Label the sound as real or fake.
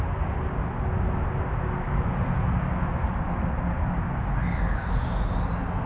real